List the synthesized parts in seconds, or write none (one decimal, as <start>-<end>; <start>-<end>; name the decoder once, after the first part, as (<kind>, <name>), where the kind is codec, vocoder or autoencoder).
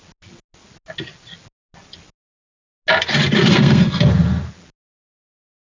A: 3.5-4.0 (codec, SNAC)